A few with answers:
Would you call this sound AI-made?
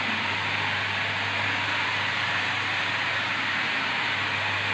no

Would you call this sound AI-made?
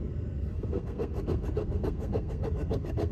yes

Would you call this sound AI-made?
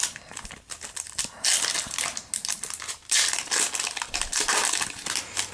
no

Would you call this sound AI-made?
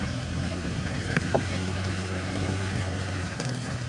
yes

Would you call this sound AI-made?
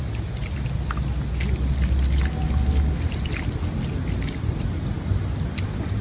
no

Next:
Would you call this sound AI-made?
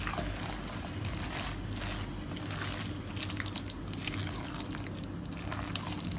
no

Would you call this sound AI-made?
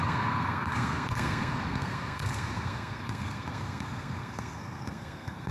yes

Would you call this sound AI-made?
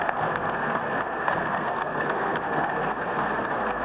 yes